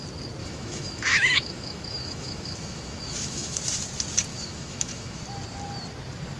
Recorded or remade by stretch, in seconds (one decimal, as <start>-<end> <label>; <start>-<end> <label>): 0.0-0.4 recorded; 0.4-3.6 remade; 3.6-4.3 recorded; 4.3-5.2 remade; 5.2-6.4 recorded